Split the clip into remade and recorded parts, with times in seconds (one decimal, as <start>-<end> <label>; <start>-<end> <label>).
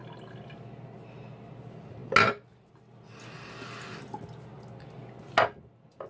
0.0-6.1 recorded